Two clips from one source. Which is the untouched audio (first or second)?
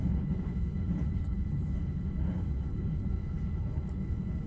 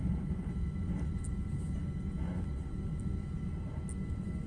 second